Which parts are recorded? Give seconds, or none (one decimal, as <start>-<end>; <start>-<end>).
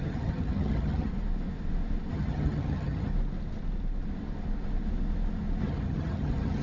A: 1.1-2.1; 3.1-5.6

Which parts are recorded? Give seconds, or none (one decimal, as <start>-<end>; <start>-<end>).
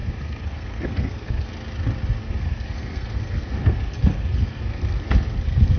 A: 1.5-2.2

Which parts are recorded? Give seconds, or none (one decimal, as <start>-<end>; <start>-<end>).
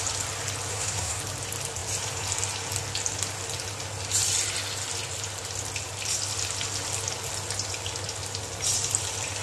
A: 0.0-0.7; 1.2-9.4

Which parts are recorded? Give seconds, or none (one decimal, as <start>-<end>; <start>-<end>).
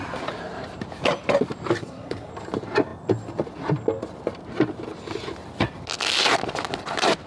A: 0.0-1.8; 2.3-7.3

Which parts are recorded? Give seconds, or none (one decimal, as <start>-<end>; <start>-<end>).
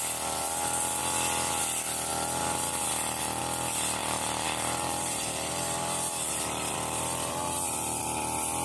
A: 0.0-4.0; 8.0-8.6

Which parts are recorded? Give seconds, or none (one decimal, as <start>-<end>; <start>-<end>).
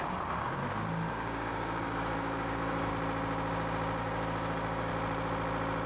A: 0.6-1.1; 2.9-4.0; 4.9-5.9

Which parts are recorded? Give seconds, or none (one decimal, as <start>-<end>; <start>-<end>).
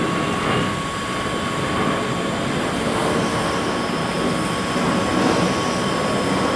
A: 0.0-6.6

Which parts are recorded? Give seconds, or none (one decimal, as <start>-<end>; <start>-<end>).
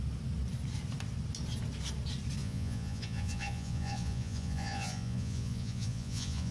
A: 0.0-2.4